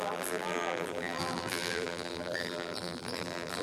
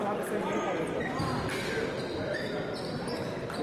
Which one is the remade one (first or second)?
first